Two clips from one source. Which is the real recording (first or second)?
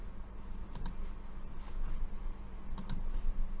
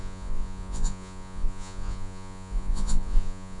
first